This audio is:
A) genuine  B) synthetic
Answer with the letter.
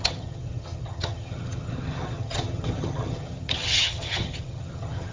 B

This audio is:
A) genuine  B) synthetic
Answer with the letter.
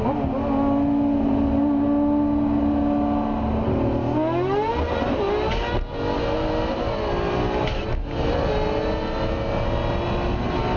A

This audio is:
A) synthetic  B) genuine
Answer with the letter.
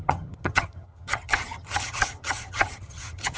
A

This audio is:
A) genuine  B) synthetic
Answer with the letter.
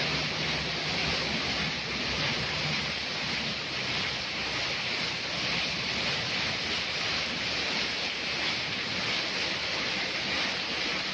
A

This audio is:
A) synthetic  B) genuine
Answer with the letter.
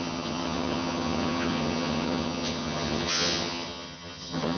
A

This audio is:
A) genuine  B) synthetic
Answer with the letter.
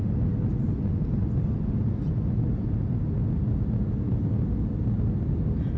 A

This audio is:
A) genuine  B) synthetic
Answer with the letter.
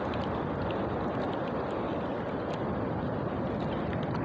A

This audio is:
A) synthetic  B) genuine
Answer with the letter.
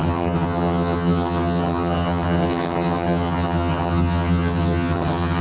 A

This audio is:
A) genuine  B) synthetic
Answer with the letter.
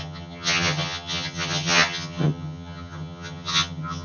B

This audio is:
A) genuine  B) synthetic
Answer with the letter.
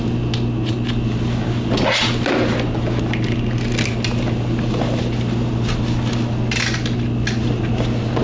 A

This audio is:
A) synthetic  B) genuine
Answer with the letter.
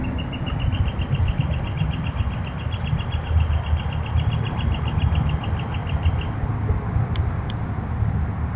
B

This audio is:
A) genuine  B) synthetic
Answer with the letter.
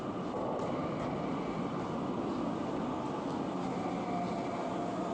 A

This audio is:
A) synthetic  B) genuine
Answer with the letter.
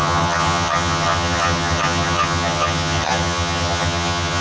A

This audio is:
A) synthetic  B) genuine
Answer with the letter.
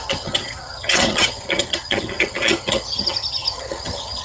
A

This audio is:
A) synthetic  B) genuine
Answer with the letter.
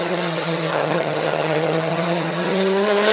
A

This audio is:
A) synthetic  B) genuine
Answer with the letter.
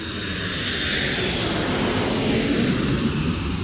B